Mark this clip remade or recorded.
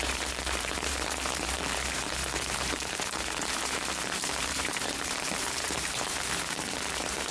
remade